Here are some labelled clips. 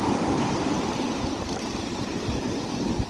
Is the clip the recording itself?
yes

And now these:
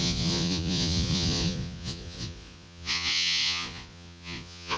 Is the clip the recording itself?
no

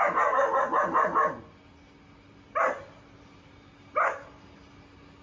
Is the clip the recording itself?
yes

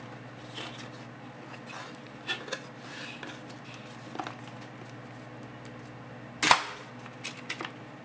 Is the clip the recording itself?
yes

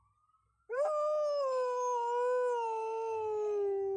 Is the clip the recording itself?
yes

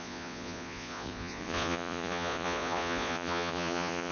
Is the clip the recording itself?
no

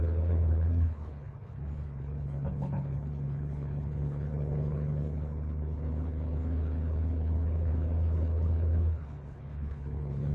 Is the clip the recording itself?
no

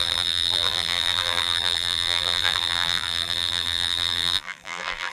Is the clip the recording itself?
no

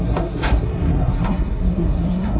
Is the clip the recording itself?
no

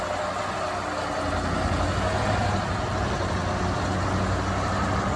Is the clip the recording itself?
yes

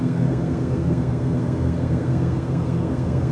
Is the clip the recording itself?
no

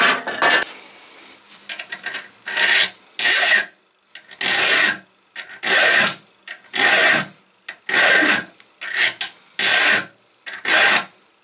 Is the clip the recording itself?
yes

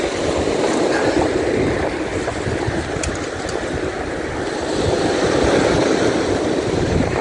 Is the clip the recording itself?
yes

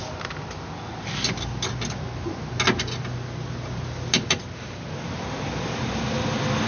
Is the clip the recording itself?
yes